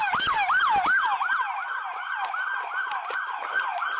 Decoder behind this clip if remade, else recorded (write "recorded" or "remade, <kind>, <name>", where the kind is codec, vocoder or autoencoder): recorded